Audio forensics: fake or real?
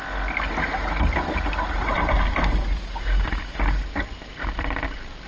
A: real